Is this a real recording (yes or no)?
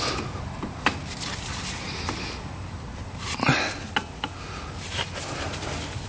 yes